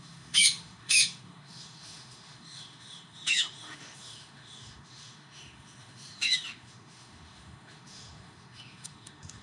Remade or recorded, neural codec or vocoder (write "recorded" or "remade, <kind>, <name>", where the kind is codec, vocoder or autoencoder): remade, autoencoder, DAC-VAE